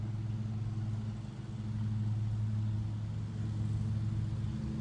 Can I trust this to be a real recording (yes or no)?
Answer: yes